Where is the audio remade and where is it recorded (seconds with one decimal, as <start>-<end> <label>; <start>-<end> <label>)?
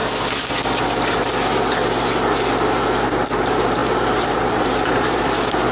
0.0-3.8 recorded; 3.8-5.2 remade; 5.2-5.7 recorded